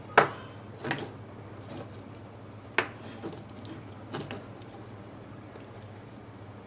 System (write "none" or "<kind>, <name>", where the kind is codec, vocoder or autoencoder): none